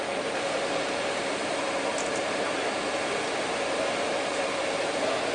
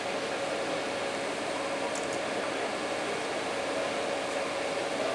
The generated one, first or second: first